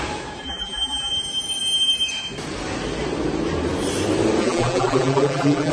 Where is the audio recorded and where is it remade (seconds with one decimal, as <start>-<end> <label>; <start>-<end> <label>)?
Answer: 0.0-0.4 recorded; 0.4-1.1 remade; 1.1-4.4 recorded; 4.4-5.7 remade